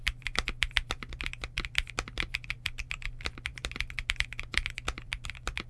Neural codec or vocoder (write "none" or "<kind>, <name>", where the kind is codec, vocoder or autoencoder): vocoder, BigVGAN v2